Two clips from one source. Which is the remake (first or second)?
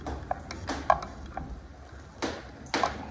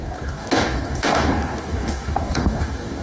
second